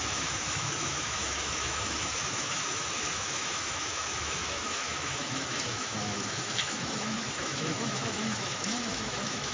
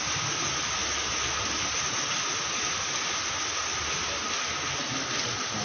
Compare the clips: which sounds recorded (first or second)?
second